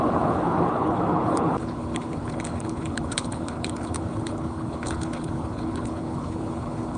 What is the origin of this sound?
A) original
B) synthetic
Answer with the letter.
B